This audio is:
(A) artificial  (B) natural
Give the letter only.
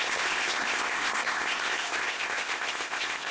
A